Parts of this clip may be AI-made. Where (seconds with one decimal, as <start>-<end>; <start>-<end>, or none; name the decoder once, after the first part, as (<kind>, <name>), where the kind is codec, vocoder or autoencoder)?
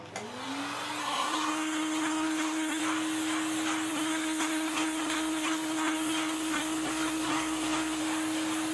1.0-2.8 (codec, SNAC); 3.9-8.0